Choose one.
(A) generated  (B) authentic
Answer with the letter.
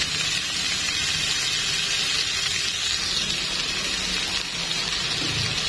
B